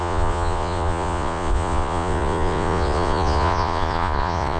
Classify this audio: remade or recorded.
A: remade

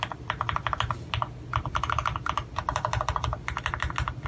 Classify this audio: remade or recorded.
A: recorded